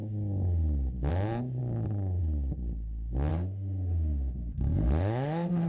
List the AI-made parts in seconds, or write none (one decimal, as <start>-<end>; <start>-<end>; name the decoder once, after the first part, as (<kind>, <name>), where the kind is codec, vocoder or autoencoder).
3.3-5.7 (autoencoder, DAC-VAE)